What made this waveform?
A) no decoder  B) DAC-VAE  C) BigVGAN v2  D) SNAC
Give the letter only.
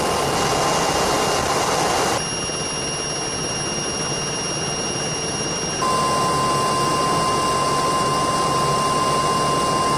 A